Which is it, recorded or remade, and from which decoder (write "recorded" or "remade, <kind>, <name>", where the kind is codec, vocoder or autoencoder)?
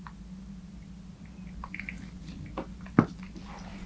recorded